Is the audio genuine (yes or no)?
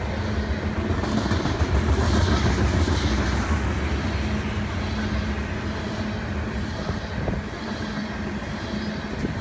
yes